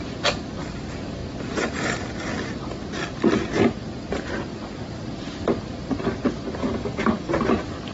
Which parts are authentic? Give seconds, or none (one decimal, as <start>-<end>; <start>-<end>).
0.0-6.6; 7.3-7.9